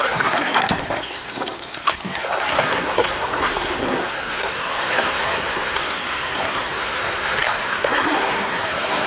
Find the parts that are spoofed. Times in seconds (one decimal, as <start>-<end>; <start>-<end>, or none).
0.0-9.1